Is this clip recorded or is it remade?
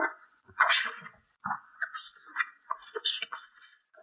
remade